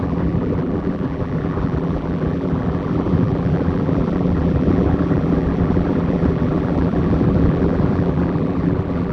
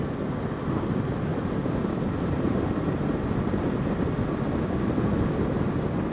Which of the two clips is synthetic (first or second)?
first